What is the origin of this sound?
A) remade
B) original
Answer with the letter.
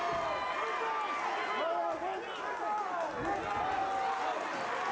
B